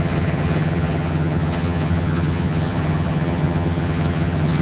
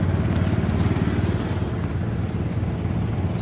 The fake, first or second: first